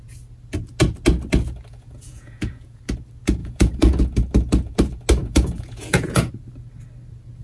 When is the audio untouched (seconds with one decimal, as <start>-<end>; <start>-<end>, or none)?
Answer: 0.0-1.7; 2.8-3.4; 4.0-5.2; 6.3-7.4